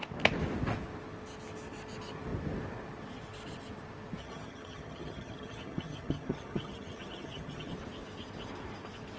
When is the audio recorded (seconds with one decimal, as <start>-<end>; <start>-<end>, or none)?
0.0-4.2; 7.7-9.2